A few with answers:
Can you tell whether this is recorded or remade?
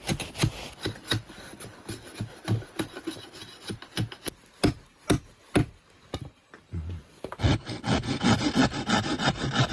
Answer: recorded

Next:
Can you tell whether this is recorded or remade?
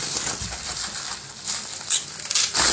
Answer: recorded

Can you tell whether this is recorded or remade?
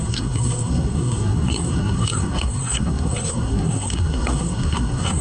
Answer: remade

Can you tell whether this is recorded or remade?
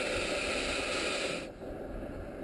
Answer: recorded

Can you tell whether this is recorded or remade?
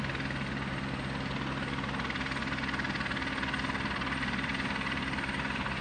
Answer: recorded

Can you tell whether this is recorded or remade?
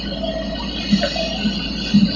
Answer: recorded